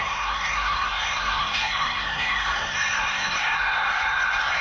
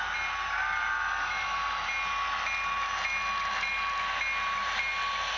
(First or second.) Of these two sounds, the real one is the second